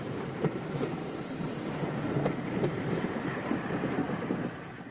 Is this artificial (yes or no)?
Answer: yes